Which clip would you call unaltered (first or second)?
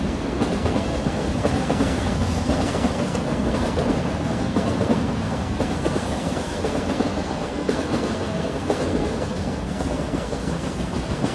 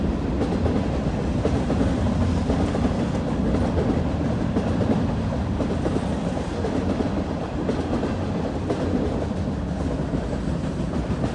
second